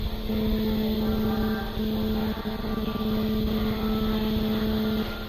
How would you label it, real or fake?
real